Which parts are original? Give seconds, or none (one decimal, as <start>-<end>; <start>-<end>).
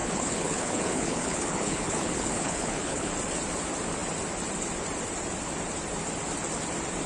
3.1-7.1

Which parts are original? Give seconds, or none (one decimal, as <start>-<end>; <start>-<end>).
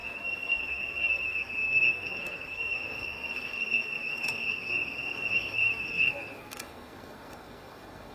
none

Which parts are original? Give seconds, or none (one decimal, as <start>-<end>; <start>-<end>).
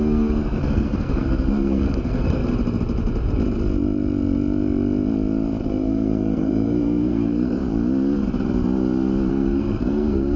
2.4-5.6; 7.6-9.3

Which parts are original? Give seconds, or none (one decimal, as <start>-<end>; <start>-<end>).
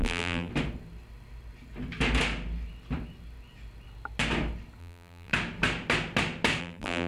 0.5-4.8; 5.3-6.6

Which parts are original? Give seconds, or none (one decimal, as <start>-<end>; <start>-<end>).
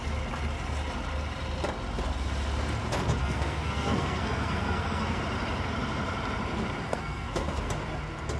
0.0-3.2; 5.2-6.9; 7.7-8.4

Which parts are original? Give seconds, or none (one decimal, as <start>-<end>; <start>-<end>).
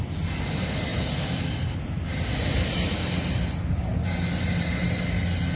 0.0-5.6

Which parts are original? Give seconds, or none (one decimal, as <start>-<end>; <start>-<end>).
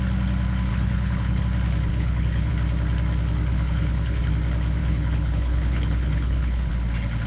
0.0-0.7; 1.4-1.9; 2.5-3.5; 4.2-4.8; 6.7-7.3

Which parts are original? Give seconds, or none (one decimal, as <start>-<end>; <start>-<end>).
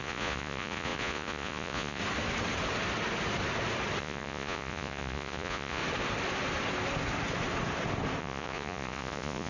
2.0-4.0; 5.8-8.2